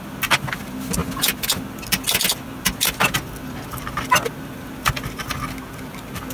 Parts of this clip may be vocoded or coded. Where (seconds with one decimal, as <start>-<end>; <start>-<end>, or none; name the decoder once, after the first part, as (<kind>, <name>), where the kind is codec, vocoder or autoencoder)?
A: none